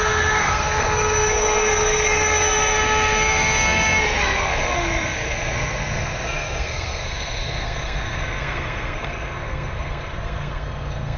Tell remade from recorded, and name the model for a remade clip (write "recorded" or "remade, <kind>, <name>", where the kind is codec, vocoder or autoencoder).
remade, codec, SNAC